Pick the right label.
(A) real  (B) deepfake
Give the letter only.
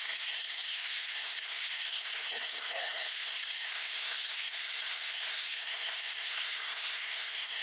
B